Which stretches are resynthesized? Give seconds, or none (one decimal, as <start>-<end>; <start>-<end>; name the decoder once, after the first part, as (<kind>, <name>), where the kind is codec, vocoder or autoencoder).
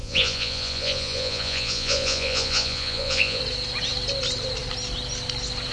0.0-3.4 (vocoder, Vocos)